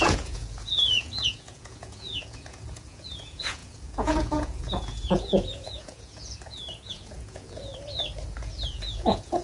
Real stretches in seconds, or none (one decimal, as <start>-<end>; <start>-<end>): 7.7-8.4